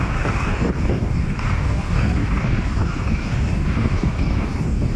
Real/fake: fake